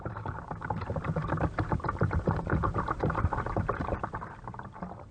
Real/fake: fake